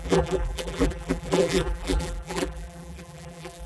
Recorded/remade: remade